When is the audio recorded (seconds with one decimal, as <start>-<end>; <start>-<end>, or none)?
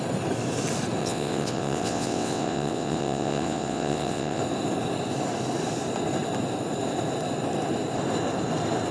0.0-1.0; 4.4-8.9